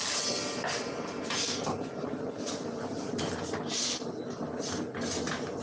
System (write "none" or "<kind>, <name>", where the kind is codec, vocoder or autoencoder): none